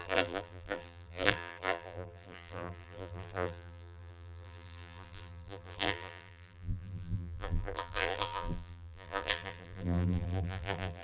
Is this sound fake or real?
fake